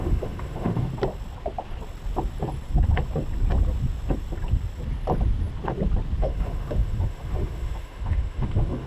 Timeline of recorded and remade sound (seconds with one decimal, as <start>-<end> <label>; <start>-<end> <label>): 0.0-0.9 remade; 0.9-6.2 recorded; 6.2-8.9 remade